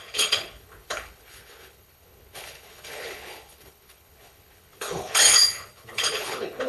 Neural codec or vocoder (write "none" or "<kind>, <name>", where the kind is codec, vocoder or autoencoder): codec, HILCodec